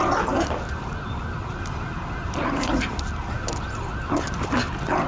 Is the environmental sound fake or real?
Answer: real